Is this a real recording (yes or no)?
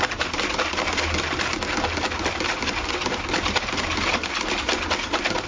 yes